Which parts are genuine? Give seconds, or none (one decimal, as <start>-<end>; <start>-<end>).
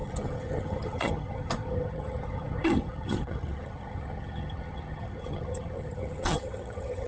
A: none